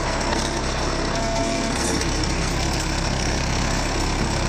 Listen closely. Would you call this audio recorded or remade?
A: remade